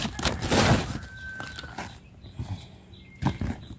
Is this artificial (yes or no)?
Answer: no